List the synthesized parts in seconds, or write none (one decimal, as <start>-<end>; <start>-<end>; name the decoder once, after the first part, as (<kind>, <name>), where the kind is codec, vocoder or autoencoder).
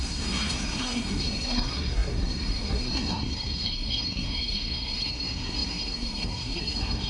0.0-7.1 (codec, SNAC)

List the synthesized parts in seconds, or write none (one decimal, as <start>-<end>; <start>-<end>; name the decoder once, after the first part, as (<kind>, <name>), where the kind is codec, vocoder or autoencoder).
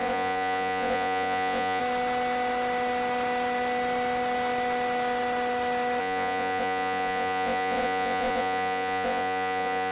0.0-1.8 (vocoder, Vocos); 6.0-9.9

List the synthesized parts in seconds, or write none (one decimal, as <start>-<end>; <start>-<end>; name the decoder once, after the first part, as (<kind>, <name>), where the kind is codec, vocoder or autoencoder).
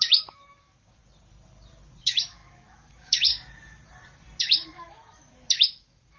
0.0-1.0 (autoencoder, DAC-VAE); 2.0-3.3; 4.4-6.2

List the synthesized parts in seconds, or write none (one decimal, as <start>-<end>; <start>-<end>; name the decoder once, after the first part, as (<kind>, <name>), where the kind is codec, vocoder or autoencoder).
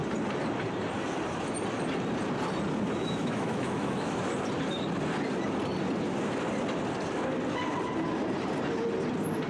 3.0-4.2 (autoencoder, DAC-VAE)